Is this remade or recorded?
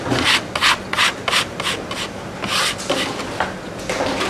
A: recorded